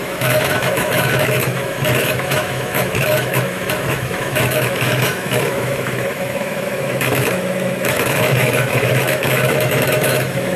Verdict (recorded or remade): remade